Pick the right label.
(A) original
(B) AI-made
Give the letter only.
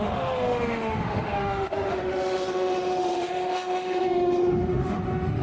B